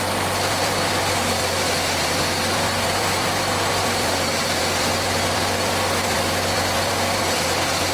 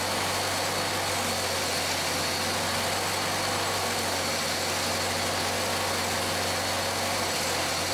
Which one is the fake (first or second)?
first